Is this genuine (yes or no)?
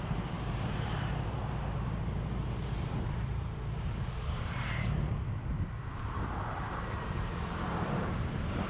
no